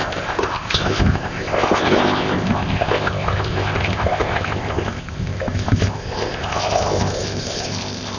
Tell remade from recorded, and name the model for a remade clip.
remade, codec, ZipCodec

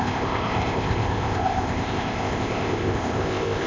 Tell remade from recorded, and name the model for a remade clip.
remade, codec, ZipCodec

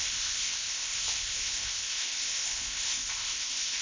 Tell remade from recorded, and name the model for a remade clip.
remade, codec, ZipCodec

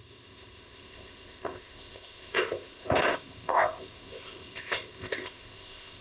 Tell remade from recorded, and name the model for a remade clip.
remade, codec, ZipCodec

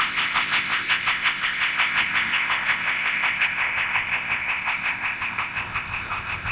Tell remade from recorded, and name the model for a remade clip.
remade, codec, ZipCodec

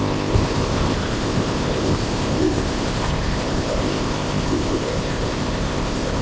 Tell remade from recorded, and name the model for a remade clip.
remade, codec, ZipCodec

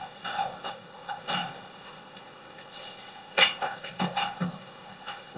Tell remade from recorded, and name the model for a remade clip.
remade, codec, ZipCodec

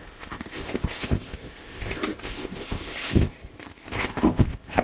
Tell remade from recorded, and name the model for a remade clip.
remade, codec, ZipCodec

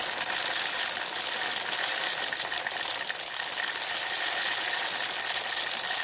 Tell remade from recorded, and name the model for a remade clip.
recorded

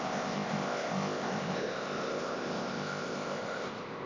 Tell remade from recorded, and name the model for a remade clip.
remade, codec, ZipCodec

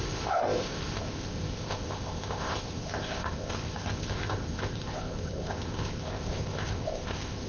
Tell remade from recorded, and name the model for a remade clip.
remade, codec, ZipCodec